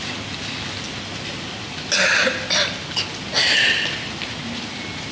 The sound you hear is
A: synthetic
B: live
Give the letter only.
B